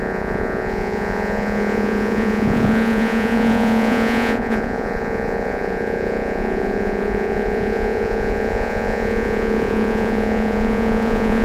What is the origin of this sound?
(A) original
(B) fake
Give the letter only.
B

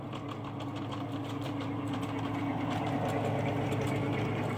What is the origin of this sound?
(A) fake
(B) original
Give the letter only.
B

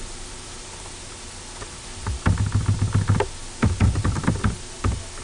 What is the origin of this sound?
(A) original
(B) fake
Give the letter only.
A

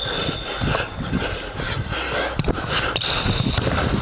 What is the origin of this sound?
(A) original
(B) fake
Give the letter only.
A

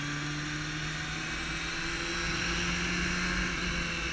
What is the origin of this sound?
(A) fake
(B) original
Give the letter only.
B